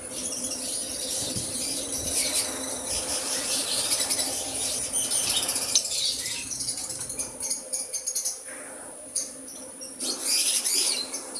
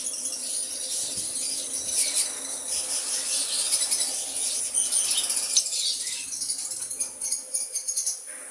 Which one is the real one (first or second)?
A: second